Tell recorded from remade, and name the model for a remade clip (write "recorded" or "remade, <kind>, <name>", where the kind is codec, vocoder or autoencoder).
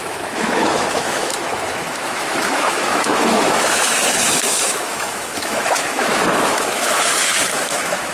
remade, autoencoder, DAC-VAE